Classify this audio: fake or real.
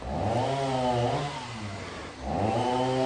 real